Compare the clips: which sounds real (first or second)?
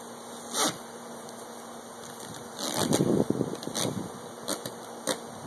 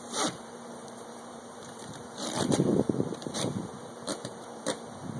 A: first